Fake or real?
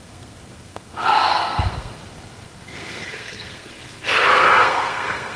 fake